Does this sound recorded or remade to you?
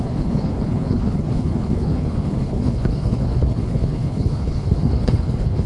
remade